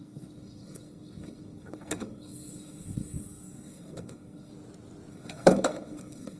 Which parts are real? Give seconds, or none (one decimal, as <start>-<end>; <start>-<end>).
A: 4.5-5.1